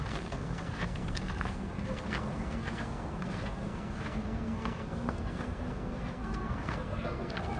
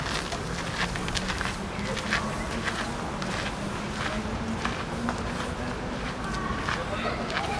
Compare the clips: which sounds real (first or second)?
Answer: second